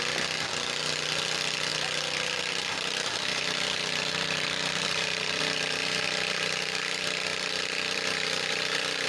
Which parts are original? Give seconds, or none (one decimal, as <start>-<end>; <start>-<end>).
0.0-1.7; 5.4-7.3